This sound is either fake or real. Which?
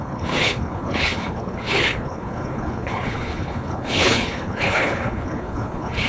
fake